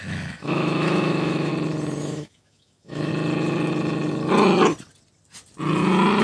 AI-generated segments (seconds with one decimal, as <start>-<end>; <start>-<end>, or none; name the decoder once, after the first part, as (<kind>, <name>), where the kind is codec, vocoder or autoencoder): 0.0-1.5 (autoencoder, DAC-VAE); 2.0-3.1